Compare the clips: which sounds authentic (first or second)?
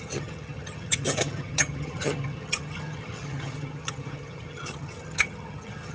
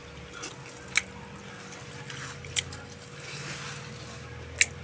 second